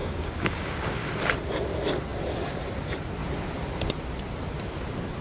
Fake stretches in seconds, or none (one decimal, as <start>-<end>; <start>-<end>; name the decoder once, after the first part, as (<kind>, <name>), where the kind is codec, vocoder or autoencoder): 0.0-1.1 (codec, DAC)